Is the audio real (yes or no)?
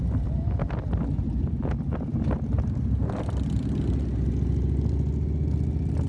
yes